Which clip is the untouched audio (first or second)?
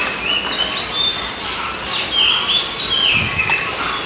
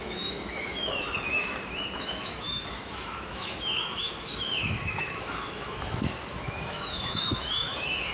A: first